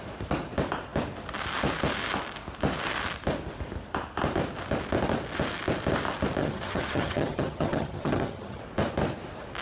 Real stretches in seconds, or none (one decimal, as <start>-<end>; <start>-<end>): 0.0-6.4; 8.6-9.6